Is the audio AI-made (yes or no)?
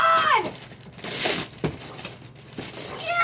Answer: no